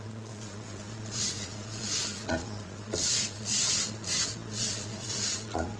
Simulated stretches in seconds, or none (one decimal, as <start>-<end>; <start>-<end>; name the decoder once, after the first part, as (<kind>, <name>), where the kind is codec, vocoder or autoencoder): 0.0-5.8 (vocoder, Vocos)